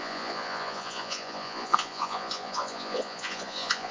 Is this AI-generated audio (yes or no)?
yes